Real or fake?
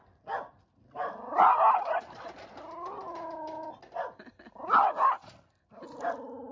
real